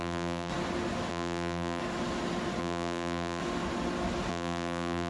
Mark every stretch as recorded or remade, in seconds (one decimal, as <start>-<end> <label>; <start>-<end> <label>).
0.0-0.5 remade; 0.5-1.1 recorded; 1.1-1.8 remade; 1.8-2.6 recorded; 2.6-3.4 remade; 3.4-4.3 recorded; 4.3-5.1 remade